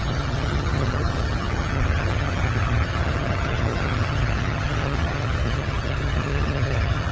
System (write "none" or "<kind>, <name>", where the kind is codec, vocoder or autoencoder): vocoder, HiFi-GAN